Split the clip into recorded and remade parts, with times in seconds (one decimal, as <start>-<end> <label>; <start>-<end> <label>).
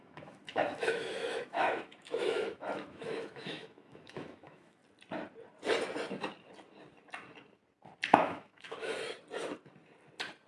0.0-4.8 remade; 4.8-8.2 recorded; 8.2-8.9 remade; 8.9-10.5 recorded